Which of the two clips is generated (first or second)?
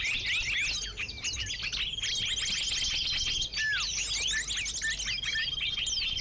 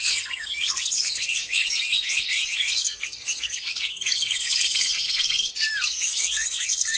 second